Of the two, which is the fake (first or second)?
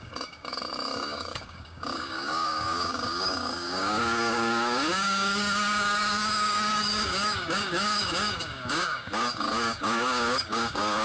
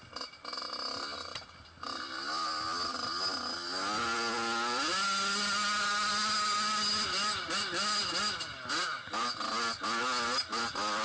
first